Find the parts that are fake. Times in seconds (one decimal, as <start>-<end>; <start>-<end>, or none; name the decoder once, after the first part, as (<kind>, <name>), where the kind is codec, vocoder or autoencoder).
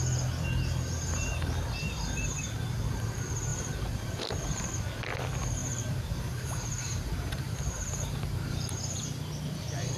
3.5-4.7 (vocoder, BigVGAN v2); 5.6-8.7